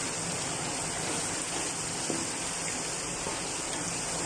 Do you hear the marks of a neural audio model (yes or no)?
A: no